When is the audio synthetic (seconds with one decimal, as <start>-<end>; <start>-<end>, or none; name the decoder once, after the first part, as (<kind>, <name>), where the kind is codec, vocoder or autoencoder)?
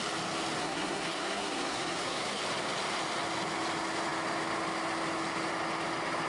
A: 0.6-2.4 (codec, SNAC)